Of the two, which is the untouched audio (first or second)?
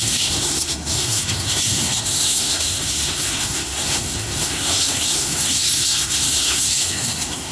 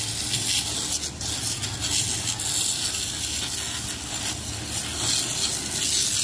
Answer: second